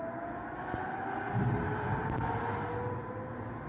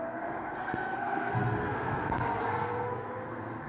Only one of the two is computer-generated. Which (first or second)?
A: second